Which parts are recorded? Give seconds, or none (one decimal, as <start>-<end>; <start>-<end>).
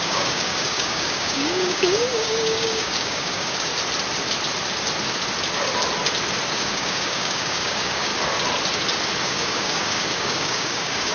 3.7-6.5; 8.1-9.2